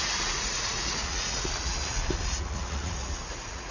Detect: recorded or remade remade